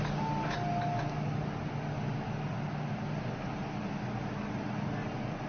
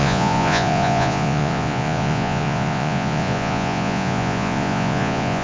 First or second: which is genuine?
first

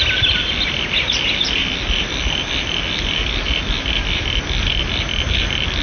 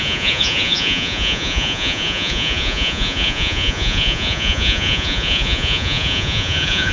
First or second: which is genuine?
first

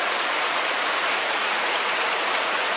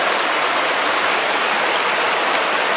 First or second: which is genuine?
second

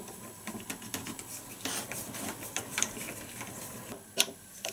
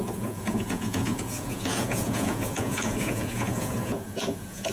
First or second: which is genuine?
first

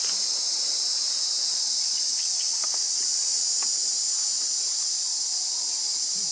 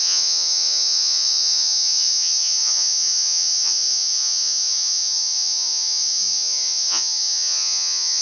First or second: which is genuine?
first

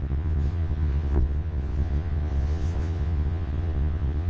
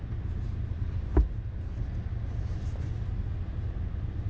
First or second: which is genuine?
second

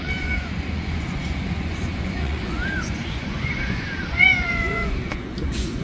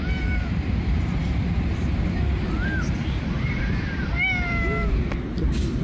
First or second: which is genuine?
second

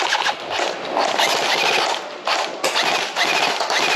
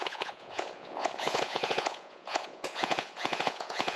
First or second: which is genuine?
first